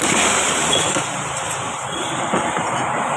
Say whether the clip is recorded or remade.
recorded